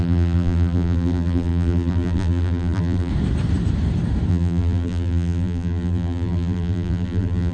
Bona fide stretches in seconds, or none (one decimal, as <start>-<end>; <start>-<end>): 3.1-4.3